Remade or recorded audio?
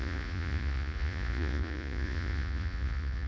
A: remade